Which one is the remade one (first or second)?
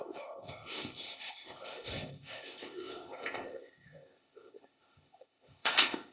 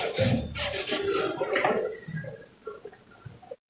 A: first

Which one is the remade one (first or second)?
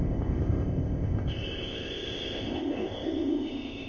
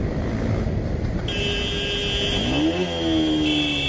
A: first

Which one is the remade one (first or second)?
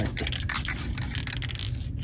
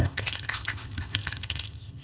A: second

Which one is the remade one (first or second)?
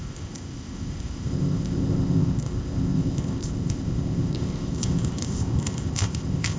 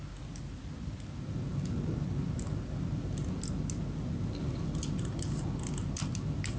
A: first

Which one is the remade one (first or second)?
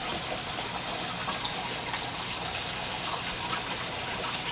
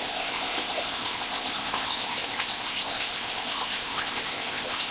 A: second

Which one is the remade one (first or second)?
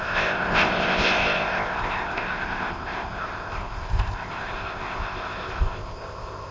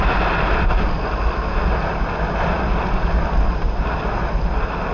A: first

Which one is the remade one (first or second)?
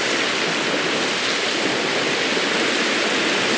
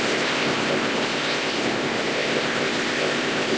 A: second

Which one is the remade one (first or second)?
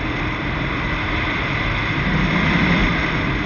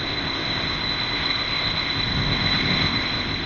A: second